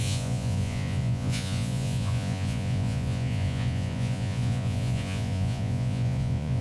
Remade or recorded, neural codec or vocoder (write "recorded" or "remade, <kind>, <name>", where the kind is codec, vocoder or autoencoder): remade, vocoder, Vocos